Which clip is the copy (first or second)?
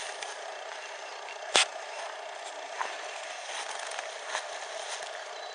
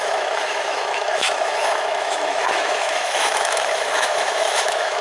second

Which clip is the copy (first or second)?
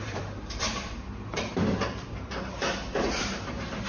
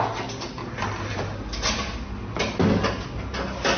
first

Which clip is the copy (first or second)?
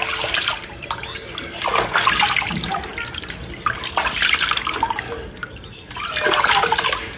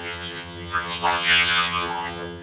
second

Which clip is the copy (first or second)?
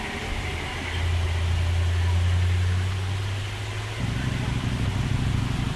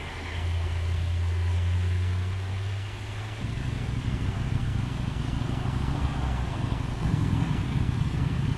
second